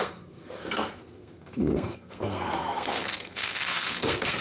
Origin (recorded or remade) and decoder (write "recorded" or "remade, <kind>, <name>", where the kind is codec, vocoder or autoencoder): remade, codec, SNAC